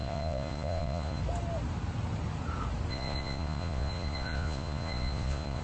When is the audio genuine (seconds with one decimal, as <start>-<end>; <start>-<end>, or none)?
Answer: 1.2-2.9